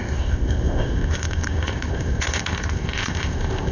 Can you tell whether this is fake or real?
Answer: fake